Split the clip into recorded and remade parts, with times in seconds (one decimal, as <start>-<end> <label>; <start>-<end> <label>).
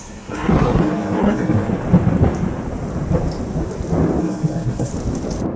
0.0-1.7 remade; 1.7-4.2 recorded; 4.2-4.9 remade; 4.9-5.6 recorded